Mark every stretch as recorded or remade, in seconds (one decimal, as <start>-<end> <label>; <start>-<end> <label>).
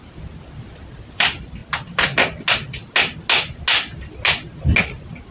0.0-1.6 remade; 1.6-4.8 recorded; 4.8-5.3 remade